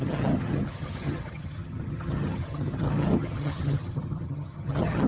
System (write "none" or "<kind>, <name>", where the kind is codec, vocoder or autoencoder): vocoder, HiFi-GAN